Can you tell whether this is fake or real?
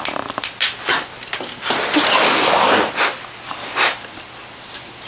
real